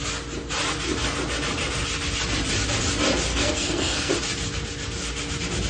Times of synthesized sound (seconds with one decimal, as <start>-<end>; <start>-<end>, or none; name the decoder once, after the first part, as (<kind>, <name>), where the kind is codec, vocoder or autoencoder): 3.3-4.1 (codec, SNAC)